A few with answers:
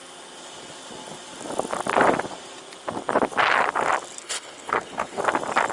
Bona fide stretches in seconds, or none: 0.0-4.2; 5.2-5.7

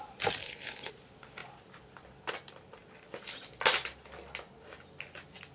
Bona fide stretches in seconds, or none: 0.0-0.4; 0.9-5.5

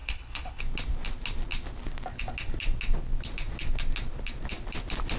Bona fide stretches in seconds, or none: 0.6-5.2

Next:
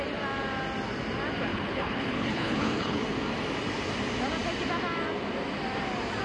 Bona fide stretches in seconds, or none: 0.0-1.5; 3.0-6.2